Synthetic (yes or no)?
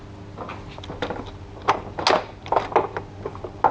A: no